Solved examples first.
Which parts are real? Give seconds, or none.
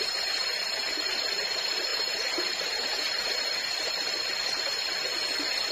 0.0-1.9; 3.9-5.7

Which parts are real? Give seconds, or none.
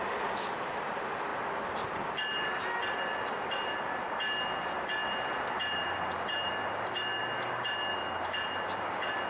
0.0-5.0; 6.5-9.3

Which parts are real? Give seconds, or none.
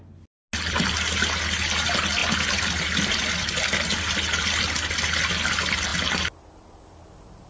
0.0-7.5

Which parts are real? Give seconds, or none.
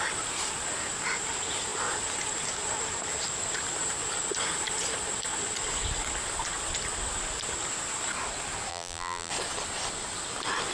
0.0-8.7; 9.3-10.7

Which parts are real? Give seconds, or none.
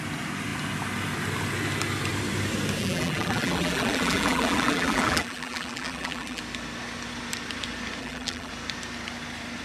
0.0-2.8; 6.4-8.0; 8.5-9.6